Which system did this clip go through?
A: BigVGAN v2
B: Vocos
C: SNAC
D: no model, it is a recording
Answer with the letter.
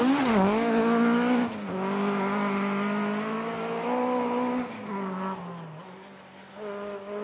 D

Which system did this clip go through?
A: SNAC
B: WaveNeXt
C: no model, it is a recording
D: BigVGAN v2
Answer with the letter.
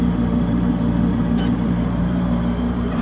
D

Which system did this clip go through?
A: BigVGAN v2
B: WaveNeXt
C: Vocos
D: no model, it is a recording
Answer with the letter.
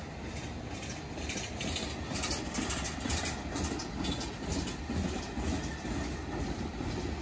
D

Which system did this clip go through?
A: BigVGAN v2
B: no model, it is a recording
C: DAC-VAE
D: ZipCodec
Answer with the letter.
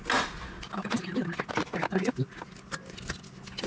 B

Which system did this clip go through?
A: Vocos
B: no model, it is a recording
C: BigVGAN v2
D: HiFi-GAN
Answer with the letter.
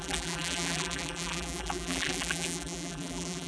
C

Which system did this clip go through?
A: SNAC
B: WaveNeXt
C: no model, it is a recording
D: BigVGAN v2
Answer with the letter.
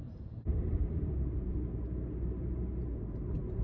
C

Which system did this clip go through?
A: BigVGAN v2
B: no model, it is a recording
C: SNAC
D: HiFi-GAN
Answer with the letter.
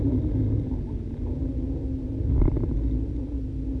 B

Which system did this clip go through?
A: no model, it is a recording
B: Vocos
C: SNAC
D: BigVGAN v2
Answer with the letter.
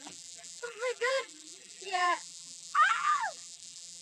D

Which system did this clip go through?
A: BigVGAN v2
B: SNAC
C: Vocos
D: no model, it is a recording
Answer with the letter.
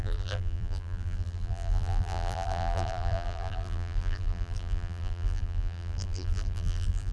A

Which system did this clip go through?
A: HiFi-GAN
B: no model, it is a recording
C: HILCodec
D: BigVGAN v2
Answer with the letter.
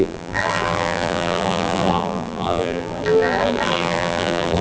D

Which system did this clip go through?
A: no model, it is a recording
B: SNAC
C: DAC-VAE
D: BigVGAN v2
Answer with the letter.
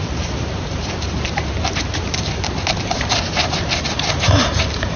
D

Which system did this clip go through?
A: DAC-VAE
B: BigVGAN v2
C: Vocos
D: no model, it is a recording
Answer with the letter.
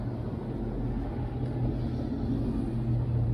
D